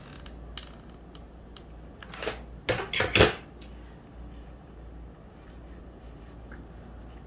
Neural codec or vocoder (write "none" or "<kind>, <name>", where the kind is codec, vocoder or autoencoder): none